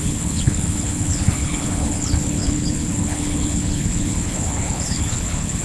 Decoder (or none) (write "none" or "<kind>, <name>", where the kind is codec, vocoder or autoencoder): codec, HILCodec